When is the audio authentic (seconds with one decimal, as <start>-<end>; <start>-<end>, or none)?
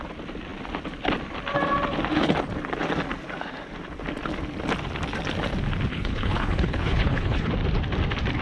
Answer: 0.0-5.9; 7.5-8.4